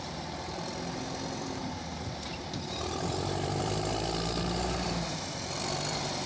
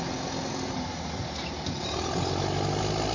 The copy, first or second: first